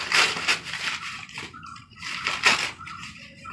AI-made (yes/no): yes